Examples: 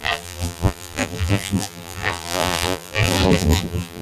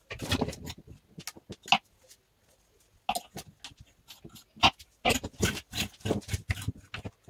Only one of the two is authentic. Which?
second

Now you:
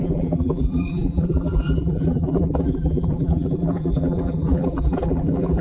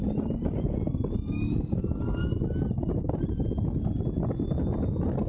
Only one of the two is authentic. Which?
second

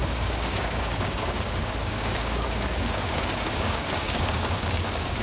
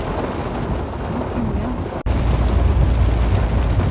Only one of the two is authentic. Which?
second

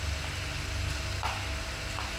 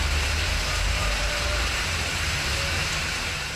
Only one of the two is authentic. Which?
first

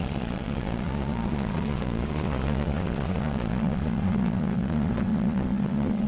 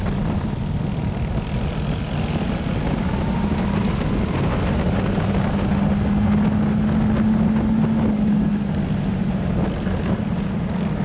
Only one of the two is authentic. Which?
second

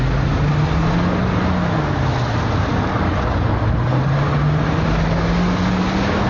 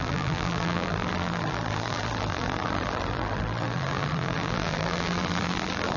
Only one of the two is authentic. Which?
first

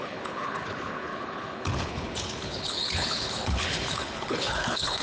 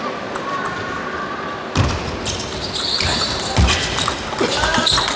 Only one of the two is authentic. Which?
second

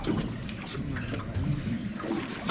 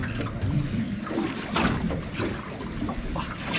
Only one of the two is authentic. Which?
second